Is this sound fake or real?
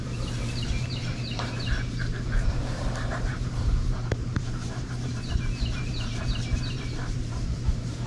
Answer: fake